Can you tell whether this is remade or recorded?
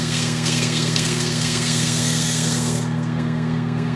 remade